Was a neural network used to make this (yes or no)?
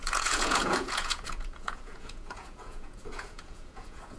yes